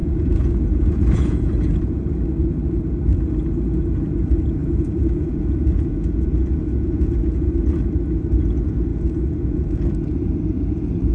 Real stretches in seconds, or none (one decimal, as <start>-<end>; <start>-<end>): 1.7-4.6; 7.5-8.9; 9.9-11.1